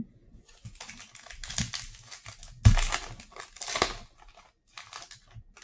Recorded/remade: recorded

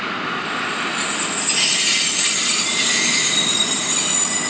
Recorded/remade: recorded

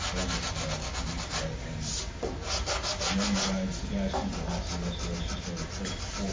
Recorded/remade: recorded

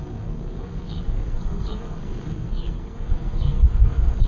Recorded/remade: remade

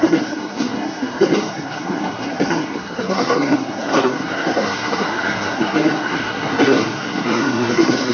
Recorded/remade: remade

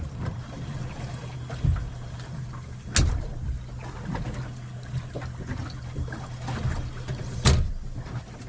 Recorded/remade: recorded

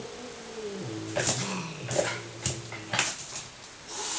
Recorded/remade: recorded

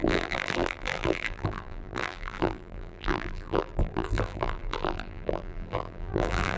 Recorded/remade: remade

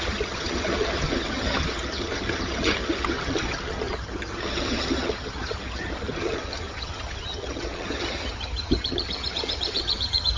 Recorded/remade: remade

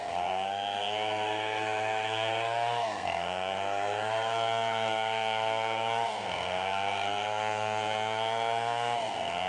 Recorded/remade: remade